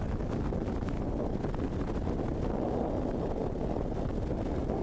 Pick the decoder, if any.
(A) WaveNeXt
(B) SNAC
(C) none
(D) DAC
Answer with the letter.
C